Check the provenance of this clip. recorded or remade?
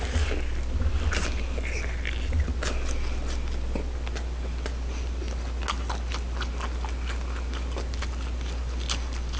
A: recorded